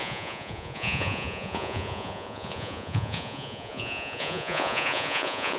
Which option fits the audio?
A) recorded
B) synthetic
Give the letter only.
B